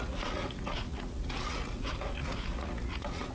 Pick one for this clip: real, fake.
fake